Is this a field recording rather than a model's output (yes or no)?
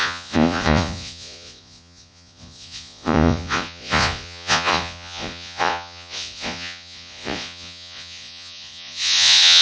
no